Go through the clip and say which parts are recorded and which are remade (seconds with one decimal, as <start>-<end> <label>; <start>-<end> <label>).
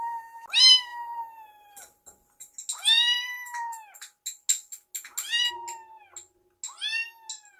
0.0-7.6 recorded